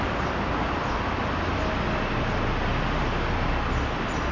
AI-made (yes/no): no